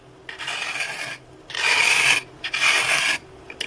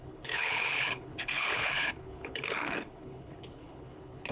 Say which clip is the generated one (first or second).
second